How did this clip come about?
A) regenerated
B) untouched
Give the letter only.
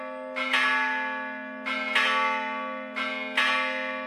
B